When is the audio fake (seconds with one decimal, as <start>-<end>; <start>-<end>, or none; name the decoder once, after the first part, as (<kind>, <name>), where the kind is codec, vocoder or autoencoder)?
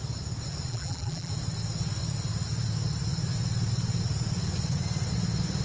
0.7-1.3 (vocoder, BigVGAN v2)